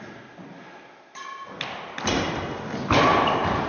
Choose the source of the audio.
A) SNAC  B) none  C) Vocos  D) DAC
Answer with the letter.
B